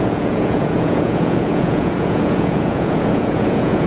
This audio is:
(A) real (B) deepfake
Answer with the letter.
B